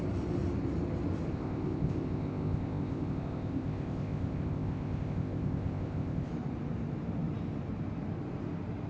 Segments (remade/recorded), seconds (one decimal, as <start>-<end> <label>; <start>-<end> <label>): 0.0-1.3 recorded; 1.3-6.3 remade; 6.3-8.9 recorded